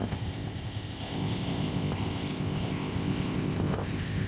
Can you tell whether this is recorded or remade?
remade